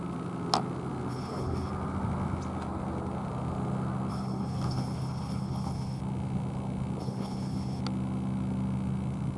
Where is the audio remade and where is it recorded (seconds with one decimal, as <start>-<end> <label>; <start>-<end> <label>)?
0.0-1.1 recorded; 1.1-1.7 remade; 1.7-4.1 recorded; 4.1-6.0 remade; 6.0-7.0 recorded; 7.0-7.8 remade; 7.8-9.4 recorded